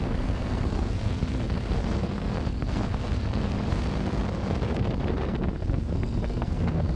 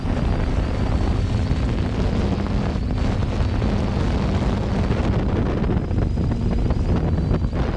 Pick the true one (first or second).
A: second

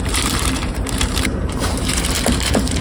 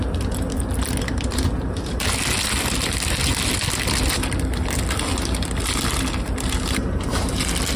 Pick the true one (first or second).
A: second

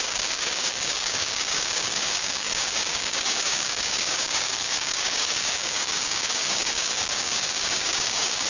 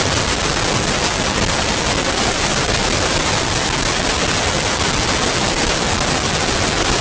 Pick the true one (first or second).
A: second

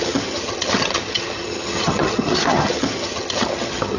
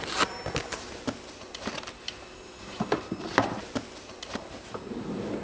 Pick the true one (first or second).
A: second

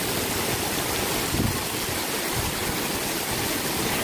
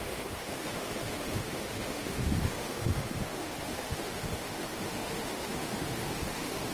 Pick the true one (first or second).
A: first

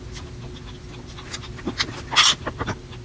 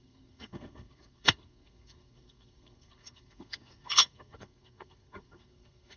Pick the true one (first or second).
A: first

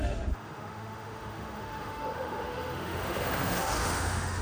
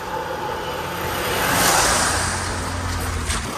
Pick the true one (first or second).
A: second